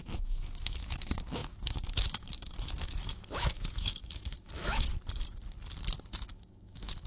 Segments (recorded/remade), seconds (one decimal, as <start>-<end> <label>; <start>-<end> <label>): 0.0-4.9 remade; 4.9-6.1 recorded; 6.1-7.1 remade